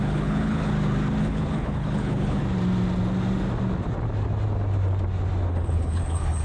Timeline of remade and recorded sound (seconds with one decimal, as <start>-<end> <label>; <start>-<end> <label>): 0.0-0.7 remade; 0.7-1.2 recorded; 1.2-2.4 remade; 2.4-5.5 recorded; 5.5-6.4 remade